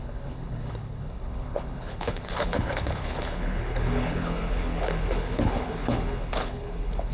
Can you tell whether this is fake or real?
fake